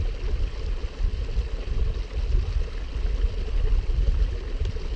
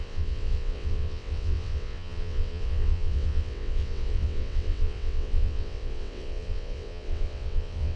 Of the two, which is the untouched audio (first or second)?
first